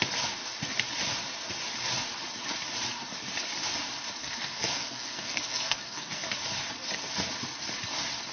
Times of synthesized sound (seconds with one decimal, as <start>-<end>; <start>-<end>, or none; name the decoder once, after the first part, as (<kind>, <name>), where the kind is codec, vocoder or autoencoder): 4.2-6.3 (codec, SNAC)

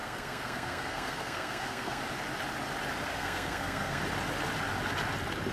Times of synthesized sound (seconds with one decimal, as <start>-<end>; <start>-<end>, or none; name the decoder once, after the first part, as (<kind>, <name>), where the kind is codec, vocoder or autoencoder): 0.0-2.0 (codec, SNAC); 3.1-4.0

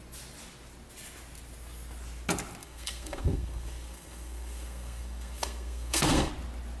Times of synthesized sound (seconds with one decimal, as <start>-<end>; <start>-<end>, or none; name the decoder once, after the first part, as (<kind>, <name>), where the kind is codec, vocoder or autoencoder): 2.6-6.3 (codec, SNAC)

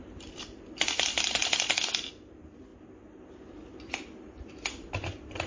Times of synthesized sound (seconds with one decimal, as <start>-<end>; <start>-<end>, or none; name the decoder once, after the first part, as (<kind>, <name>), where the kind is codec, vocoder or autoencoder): none

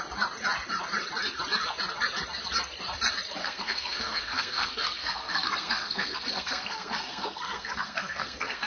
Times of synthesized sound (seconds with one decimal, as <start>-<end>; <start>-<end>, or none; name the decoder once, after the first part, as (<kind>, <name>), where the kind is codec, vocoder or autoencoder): 3.4-8.7 (codec, SNAC)

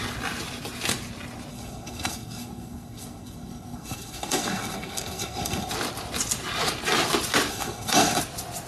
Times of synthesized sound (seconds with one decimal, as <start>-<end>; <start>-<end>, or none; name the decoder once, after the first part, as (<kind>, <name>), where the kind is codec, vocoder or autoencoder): 1.5-5.7 (codec, SNAC); 7.5-8.2